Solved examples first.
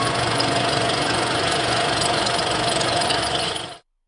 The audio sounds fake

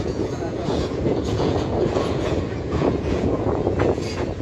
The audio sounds fake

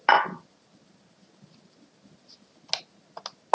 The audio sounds real